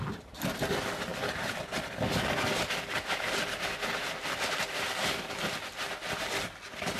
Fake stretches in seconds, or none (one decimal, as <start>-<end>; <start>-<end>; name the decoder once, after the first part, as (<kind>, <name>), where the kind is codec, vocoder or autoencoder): none